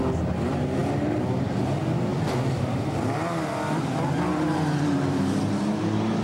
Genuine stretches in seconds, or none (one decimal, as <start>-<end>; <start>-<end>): 0.0-2.1; 5.8-6.2